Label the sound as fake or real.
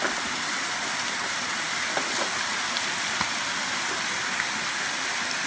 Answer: real